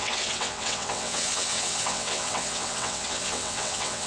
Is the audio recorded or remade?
remade